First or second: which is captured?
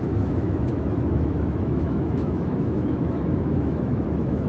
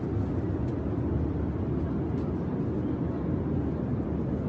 second